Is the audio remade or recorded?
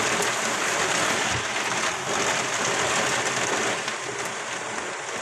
recorded